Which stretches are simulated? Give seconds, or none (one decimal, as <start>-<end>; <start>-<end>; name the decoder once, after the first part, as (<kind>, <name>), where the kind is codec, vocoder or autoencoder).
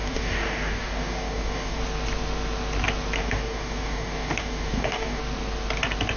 0.0-1.8 (codec, DAC); 3.2-5.2